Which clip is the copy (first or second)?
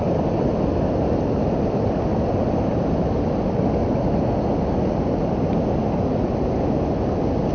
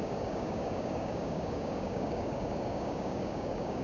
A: second